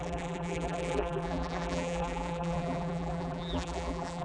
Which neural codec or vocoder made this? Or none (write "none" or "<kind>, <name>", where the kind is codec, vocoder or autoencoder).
vocoder, BigVGAN v2